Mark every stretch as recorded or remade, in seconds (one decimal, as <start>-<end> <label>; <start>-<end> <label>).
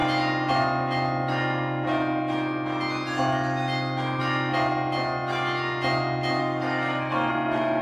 0.0-6.4 recorded; 6.4-7.3 remade; 7.3-7.8 recorded